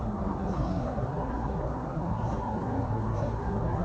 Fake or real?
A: fake